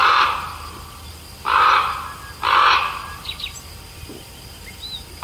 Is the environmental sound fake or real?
real